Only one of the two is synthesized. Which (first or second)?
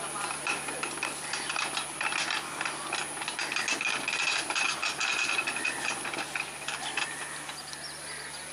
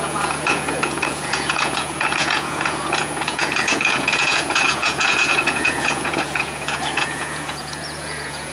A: second